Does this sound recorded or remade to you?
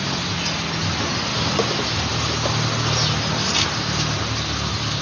recorded